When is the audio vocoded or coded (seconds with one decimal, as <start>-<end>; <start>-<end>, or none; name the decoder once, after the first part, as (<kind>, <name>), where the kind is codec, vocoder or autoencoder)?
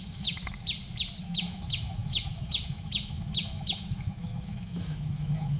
0.0-0.4 (autoencoder, DAC-VAE); 1.2-5.6